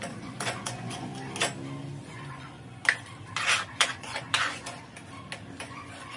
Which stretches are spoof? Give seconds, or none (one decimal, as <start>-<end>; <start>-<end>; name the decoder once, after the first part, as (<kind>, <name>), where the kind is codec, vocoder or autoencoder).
0.0-1.1 (vocoder, Vocos); 2.0-2.8; 3.7-5.0; 5.6-6.2